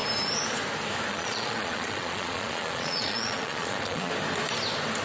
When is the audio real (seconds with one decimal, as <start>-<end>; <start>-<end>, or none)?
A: 0.0-1.1; 4.1-5.0